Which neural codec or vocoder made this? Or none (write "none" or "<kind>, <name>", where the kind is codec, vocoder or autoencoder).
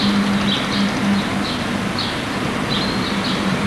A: none